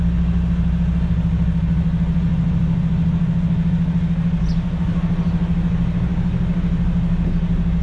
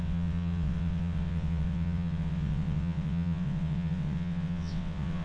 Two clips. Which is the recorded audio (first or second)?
first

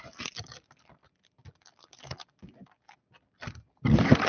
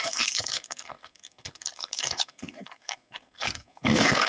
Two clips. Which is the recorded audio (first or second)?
first